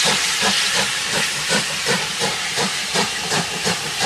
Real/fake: fake